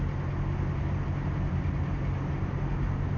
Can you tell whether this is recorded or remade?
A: recorded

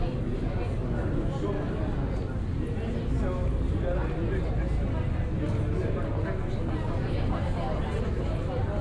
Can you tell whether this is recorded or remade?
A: recorded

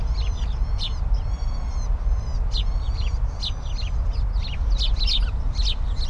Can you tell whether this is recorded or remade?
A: recorded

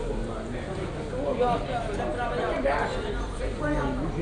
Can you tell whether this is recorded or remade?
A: recorded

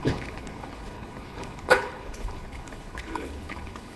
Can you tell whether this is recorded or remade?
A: remade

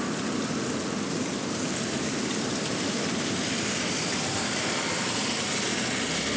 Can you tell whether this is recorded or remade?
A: recorded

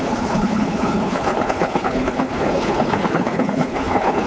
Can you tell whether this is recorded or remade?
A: remade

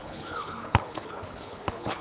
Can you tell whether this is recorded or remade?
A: remade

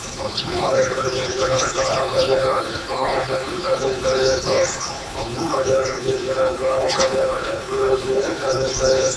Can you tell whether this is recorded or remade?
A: remade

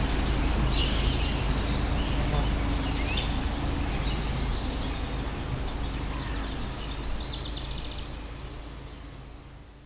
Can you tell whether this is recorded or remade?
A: recorded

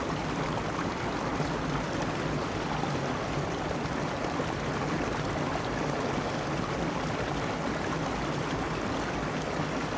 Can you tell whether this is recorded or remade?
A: recorded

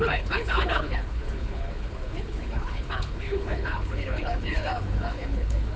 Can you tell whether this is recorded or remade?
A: remade